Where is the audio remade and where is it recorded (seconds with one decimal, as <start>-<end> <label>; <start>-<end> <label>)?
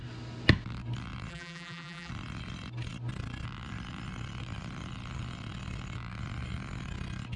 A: 0.0-1.3 recorded; 1.3-2.1 remade; 2.1-7.4 recorded